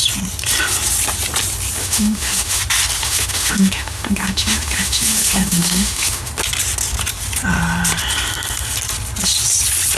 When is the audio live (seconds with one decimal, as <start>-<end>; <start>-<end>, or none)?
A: 0.0-1.8; 2.6-3.0; 6.3-10.0